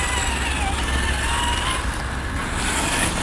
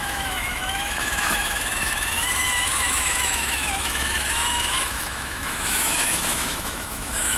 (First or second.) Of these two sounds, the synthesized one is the second